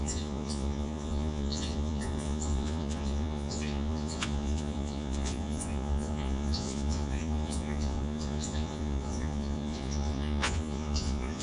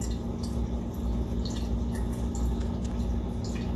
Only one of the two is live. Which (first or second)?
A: second